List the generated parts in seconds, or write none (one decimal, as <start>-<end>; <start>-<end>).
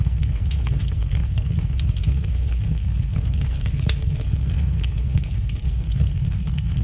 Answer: 0.0-6.8